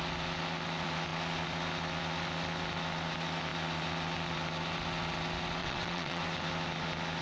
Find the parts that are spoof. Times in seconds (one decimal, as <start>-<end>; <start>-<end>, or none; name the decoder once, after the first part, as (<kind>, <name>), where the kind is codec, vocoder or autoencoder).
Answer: 5.6-6.2 (vocoder, WaveNeXt)